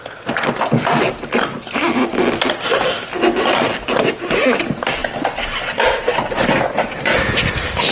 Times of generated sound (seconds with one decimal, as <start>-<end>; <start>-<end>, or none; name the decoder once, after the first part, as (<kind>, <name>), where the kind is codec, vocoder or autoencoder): none